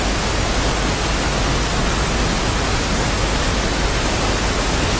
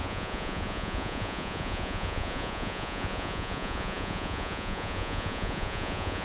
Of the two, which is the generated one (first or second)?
second